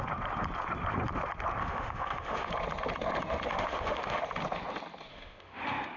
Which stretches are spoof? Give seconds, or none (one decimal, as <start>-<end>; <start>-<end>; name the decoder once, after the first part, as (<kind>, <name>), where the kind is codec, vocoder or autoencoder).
1.6-2.5 (autoencoder, DAC-VAE); 3.5-4.2; 5.1-5.6